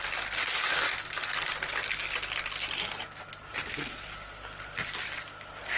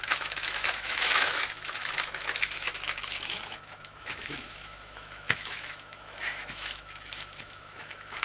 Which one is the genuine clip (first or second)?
first